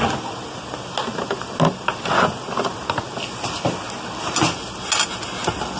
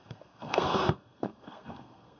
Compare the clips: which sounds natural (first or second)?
first